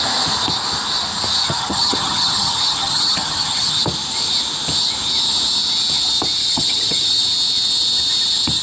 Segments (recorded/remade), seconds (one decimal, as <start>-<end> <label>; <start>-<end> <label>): 0.0-1.4 recorded; 1.4-3.8 remade; 3.8-6.4 recorded; 6.4-7.2 remade; 7.2-8.6 recorded